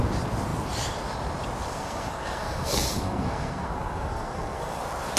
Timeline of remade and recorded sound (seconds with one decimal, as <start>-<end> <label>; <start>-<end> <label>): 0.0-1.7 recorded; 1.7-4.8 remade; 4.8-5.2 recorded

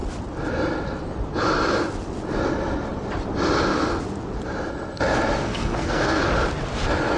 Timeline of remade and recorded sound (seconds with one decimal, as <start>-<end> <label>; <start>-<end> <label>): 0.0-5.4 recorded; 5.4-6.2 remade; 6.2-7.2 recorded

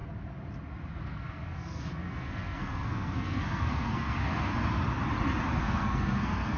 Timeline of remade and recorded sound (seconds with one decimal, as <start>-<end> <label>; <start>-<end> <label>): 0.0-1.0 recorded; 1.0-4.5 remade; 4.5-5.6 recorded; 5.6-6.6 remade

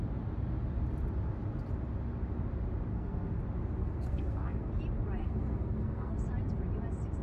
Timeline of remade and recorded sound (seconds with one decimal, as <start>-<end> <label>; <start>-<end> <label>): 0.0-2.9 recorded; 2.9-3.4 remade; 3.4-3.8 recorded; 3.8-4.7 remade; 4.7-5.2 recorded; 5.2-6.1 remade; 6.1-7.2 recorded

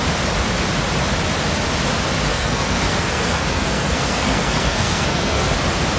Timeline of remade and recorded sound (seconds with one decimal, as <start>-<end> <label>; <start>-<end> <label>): 0.0-2.3 recorded; 2.3-5.5 remade; 5.5-6.0 recorded

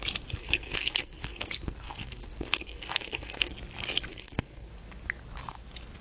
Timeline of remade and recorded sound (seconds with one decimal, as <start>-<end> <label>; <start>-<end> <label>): 0.0-0.4 recorded; 0.4-3.5 remade; 3.5-4.1 recorded; 4.1-4.7 remade; 4.7-6.0 recorded